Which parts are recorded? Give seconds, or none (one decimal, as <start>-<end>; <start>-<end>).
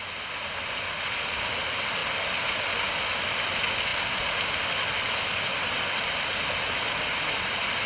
0.0-7.9